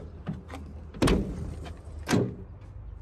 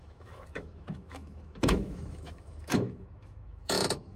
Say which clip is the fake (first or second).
second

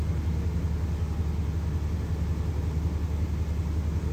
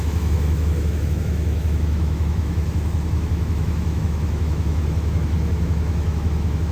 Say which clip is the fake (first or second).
second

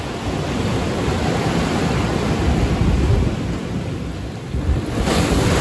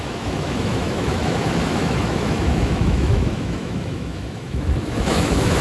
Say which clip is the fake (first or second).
second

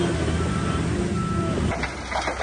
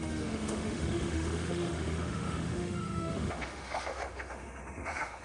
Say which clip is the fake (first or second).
second